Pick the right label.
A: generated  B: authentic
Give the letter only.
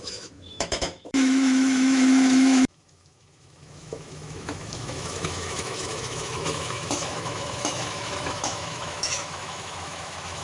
A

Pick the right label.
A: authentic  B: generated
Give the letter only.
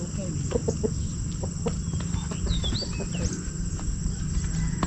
A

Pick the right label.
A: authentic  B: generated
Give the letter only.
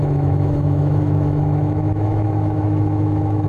B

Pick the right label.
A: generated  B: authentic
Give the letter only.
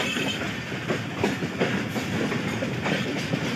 B